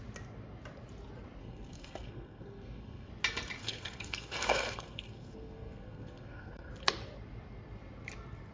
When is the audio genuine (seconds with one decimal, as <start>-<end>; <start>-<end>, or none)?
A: 0.0-1.4; 3.1-3.6; 6.7-8.5

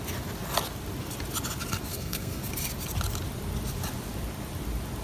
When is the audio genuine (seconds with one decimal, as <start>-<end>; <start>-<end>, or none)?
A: 0.0-1.9; 2.4-5.0

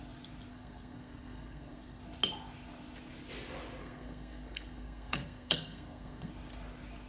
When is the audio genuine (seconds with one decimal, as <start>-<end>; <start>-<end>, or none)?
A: 0.0-0.5; 2.0-3.8; 6.3-7.1

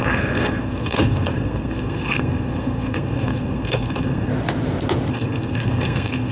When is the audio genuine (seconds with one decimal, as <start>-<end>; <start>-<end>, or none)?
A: 4.3-5.1

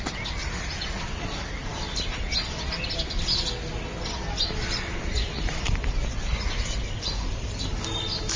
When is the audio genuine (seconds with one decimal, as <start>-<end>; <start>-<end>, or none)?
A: 0.0-8.4

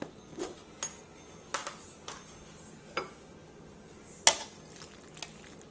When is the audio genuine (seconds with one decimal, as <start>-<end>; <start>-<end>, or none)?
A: 0.0-5.7

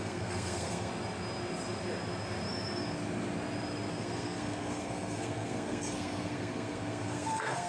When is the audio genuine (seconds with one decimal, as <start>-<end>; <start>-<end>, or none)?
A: 0.9-3.9

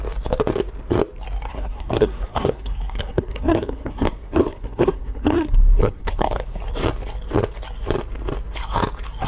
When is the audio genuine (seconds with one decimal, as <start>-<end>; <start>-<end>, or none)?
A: 0.0-1.5; 6.6-9.3